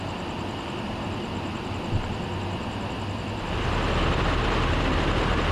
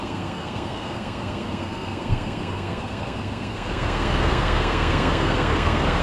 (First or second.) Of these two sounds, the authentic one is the first